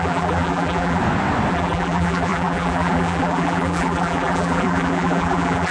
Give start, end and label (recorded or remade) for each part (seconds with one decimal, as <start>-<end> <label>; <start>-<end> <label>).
0.0-1.0 remade; 1.0-1.5 recorded; 1.5-5.7 remade

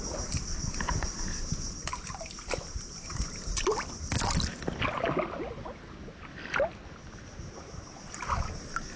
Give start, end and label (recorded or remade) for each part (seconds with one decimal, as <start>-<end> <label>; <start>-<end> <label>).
0.0-9.0 recorded

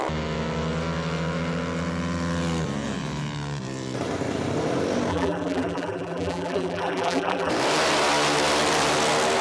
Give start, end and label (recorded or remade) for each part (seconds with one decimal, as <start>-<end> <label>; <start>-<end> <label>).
0.0-5.1 recorded; 5.1-7.5 remade; 7.5-9.4 recorded

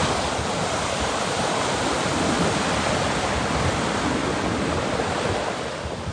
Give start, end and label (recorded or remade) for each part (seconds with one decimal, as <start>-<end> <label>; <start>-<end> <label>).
0.0-3.7 remade; 3.7-6.1 recorded

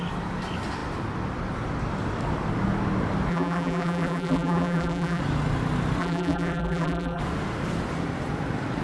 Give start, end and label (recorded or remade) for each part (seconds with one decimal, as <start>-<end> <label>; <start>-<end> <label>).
0.0-3.3 recorded; 3.3-5.2 remade; 5.2-6.0 recorded; 6.0-7.2 remade; 7.2-8.8 recorded

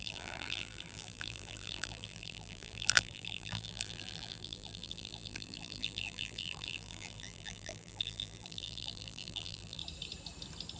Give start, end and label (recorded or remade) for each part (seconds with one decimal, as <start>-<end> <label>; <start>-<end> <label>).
0.0-9.8 remade; 9.8-10.8 recorded